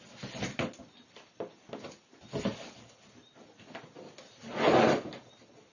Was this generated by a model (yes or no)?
no